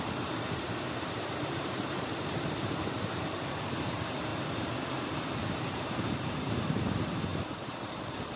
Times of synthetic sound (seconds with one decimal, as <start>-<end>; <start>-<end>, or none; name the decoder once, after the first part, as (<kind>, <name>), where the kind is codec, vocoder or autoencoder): 0.0-8.4 (vocoder, BigVGAN v2)